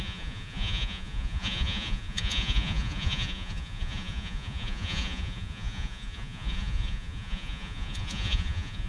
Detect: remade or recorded remade